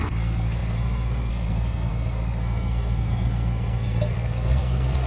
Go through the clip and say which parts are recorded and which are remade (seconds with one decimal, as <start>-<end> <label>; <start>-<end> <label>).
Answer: 0.0-5.1 remade